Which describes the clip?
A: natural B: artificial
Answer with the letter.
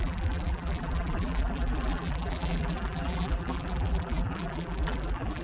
B